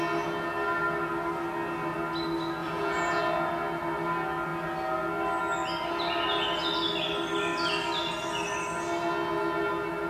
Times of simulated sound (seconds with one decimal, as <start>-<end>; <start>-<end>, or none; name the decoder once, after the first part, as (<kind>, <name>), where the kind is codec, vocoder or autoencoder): 2.6-3.2 (vocoder, Vocos)